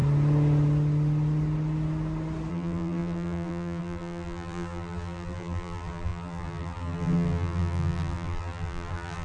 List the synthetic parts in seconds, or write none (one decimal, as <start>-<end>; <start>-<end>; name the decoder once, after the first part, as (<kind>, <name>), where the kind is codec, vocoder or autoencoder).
2.5-9.2 (vocoder, BigVGAN v2)